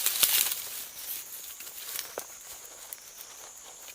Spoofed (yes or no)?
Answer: no